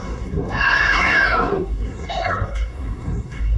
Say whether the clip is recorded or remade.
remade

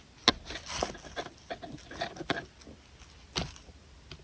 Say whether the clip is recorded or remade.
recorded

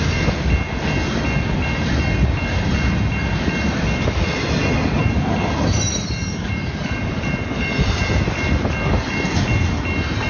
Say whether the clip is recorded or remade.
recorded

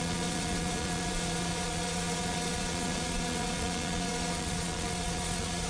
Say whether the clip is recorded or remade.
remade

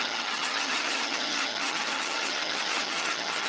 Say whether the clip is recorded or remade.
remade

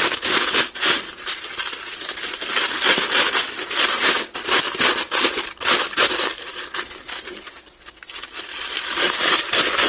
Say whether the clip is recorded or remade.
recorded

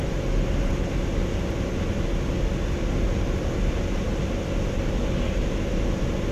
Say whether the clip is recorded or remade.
recorded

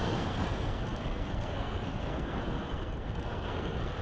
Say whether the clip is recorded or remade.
remade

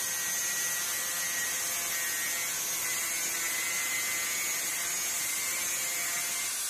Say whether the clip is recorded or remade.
recorded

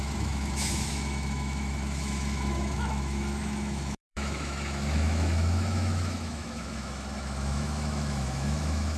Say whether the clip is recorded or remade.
remade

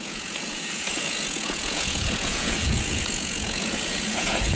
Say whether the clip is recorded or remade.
remade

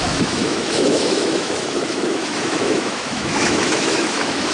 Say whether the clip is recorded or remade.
remade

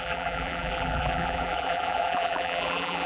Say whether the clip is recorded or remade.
remade